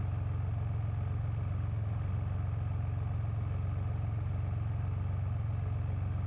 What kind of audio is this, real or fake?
real